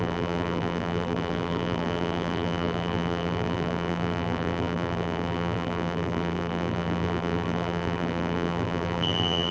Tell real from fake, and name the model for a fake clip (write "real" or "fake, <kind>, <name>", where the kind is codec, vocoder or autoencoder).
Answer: fake, vocoder, BigVGAN v2